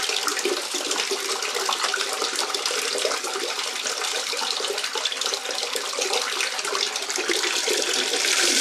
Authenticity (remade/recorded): remade